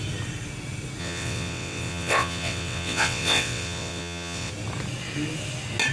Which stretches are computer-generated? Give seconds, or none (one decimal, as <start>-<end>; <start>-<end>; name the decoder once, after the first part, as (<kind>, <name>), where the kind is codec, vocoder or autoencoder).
1.0-4.5 (vocoder, WaveNeXt)